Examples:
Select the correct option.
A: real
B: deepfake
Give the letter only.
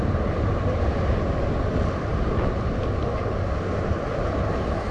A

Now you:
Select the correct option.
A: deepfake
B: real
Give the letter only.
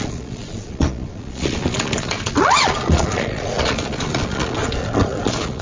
A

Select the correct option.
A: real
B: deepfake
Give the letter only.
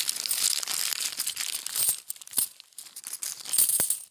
A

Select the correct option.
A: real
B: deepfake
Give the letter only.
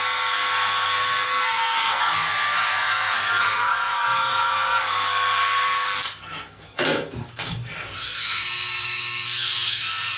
B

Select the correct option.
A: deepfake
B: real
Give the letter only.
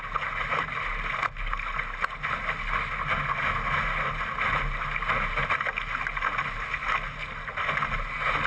B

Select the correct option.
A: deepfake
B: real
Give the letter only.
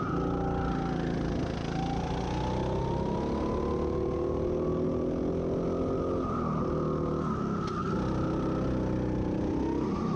B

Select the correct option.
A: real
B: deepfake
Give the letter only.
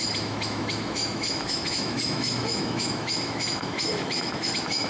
B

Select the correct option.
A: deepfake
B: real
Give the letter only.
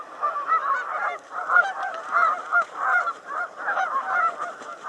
A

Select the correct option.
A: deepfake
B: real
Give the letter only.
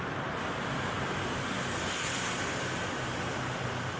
B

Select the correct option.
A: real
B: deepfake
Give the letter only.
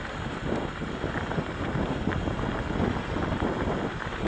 A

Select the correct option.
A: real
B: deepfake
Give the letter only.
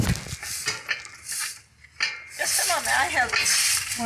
A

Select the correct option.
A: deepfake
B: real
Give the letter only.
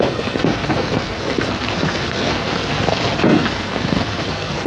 A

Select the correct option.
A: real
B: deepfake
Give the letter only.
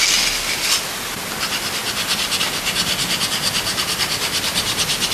A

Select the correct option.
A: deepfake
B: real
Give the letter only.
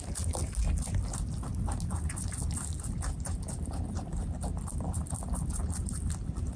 B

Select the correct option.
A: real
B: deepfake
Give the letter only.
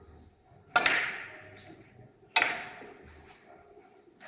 A